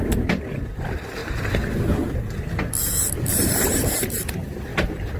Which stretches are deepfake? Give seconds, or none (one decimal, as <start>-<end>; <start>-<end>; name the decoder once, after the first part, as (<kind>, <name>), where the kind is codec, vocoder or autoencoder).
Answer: 0.0-4.7 (vocoder, BigVGAN v2)